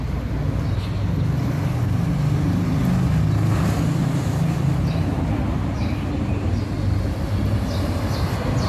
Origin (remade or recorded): recorded